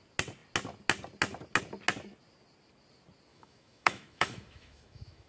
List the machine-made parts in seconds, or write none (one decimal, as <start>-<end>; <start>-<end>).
3.3-5.3